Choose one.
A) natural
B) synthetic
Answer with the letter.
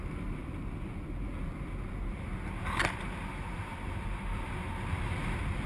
A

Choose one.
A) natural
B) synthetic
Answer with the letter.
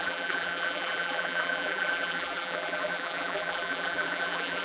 B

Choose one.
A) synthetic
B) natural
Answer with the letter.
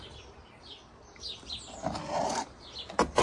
B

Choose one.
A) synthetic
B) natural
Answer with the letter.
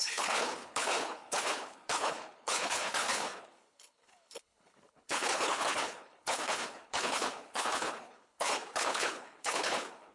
A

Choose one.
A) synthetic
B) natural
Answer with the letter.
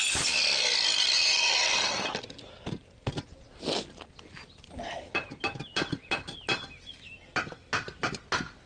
B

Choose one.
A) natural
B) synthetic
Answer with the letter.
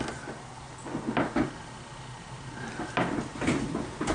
A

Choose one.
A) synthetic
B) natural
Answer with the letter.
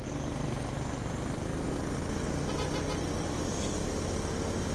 B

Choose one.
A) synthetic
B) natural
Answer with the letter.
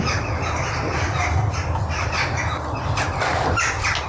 B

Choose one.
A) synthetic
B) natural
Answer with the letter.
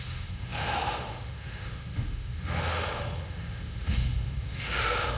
A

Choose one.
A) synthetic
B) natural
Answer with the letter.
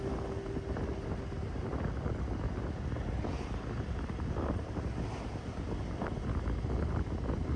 B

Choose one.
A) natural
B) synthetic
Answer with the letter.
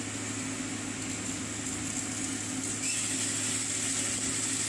A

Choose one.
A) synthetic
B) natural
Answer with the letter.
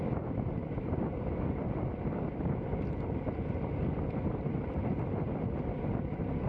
B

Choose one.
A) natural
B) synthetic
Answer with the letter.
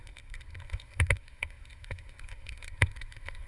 B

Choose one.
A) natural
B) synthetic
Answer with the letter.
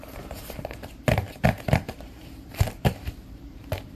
B